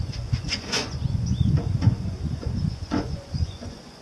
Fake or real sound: fake